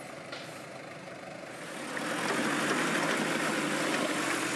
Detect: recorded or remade recorded